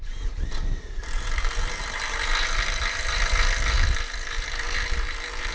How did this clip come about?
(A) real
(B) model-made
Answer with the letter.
B